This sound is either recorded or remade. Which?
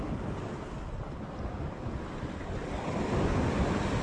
recorded